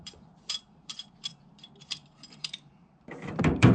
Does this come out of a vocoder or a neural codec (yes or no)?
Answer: yes